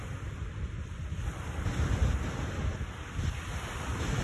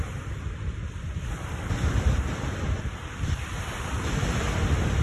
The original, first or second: first